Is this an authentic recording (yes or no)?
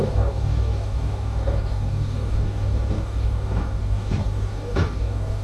no